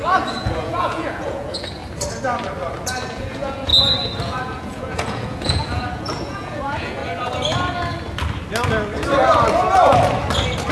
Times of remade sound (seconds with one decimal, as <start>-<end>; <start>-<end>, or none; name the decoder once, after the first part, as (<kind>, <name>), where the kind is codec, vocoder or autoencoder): 0.0-1.8 (vocoder, Vocos); 3.0-3.7; 4.2-7.0